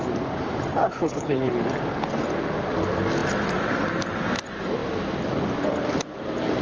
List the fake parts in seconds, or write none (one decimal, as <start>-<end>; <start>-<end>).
0.7-1.5